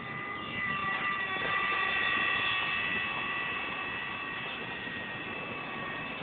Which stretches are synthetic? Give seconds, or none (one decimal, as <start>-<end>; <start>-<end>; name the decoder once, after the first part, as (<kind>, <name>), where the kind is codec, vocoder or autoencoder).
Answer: none